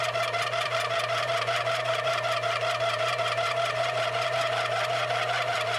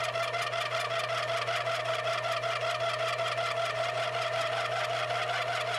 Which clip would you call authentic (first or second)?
second